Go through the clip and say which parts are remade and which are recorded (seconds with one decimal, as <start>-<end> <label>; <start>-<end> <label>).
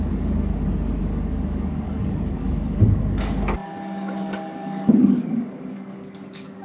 0.0-0.5 remade; 0.5-1.0 recorded; 1.0-6.6 remade